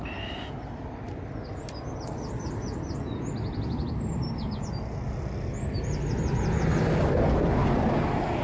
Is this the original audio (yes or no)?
yes